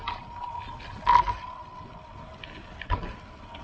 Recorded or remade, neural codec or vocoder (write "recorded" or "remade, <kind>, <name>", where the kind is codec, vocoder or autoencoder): recorded